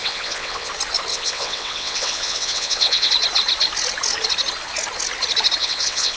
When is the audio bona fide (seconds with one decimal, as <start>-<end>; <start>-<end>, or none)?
0.7-1.1; 3.1-5.6